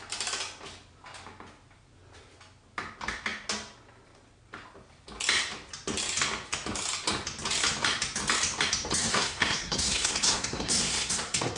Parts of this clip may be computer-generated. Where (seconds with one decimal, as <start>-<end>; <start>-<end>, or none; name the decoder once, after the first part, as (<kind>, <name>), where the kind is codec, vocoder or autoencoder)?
9.0-11.6 (codec, SNAC)